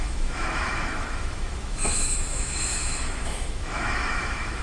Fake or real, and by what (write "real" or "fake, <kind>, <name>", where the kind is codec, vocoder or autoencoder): fake, autoencoder, DAC-VAE